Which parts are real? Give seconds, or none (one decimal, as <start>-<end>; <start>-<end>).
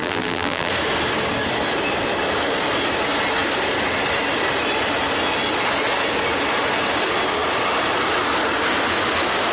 0.7-9.5